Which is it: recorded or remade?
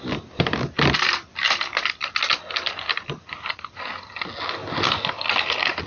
recorded